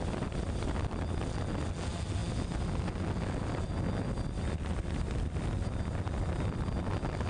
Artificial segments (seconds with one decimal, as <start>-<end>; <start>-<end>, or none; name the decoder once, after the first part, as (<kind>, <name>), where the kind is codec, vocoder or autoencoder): none